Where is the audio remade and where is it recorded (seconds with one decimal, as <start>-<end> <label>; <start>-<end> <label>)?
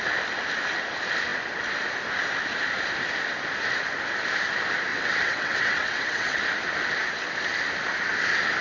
0.0-4.9 recorded; 4.9-6.4 remade; 6.4-8.6 recorded